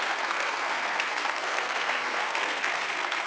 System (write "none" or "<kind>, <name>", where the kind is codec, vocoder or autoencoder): codec, SNAC